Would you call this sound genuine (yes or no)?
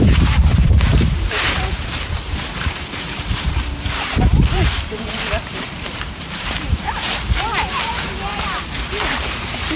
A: no